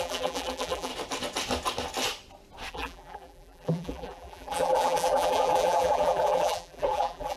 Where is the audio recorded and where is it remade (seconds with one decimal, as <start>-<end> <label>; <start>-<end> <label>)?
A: 0.0-0.9 remade; 0.9-2.7 recorded; 2.7-7.4 remade